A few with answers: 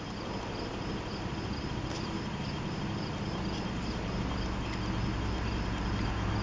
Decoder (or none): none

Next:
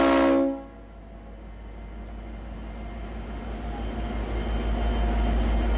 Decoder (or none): none